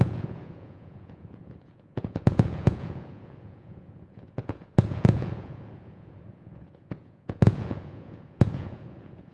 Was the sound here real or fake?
fake